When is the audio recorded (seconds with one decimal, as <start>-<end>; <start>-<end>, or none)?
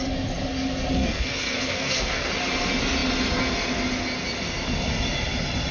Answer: 0.0-1.0; 2.3-5.7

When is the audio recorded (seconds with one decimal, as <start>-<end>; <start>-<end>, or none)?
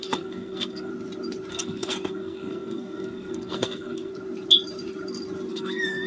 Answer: 0.9-1.5; 4.1-5.5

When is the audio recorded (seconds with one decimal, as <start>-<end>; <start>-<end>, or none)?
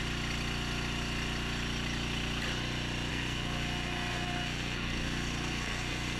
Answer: 0.0-3.1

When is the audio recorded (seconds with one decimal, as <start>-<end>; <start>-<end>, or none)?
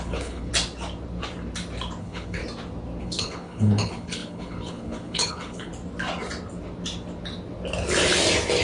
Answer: 0.5-2.0; 2.4-3.0; 5.7-8.6